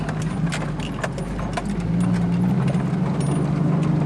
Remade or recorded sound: recorded